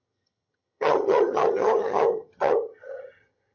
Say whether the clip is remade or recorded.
remade